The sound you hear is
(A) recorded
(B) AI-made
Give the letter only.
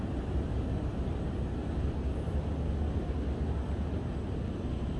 A